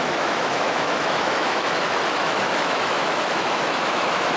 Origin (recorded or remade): remade